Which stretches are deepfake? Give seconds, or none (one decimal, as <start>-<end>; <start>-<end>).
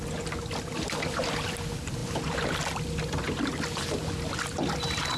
none